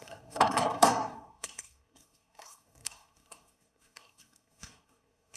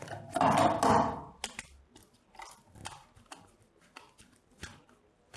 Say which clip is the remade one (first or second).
first